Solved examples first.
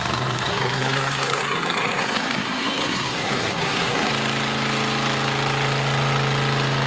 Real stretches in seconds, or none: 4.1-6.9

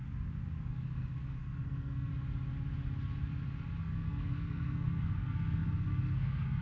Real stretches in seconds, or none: 0.0-0.7; 2.1-3.8

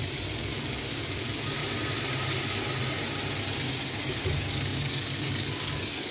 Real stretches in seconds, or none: 1.6-4.1

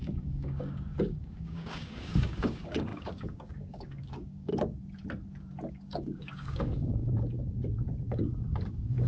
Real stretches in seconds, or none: 4.5-5.7; 7.0-8.0

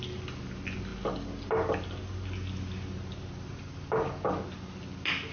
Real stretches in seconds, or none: 0.0-5.3